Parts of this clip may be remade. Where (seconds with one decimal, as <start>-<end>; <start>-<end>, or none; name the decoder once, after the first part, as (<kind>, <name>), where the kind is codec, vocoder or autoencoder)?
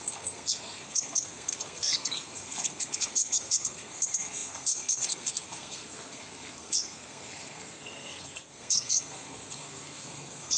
0.0-10.6 (codec, SNAC)